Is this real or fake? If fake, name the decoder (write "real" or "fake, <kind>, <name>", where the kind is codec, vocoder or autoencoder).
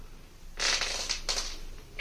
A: real